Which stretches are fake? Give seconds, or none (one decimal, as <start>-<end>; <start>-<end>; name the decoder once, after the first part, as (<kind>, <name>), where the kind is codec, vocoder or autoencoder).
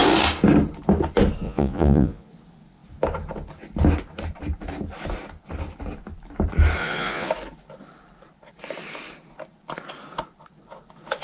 1.4-2.3 (vocoder, Vocos); 6.8-7.3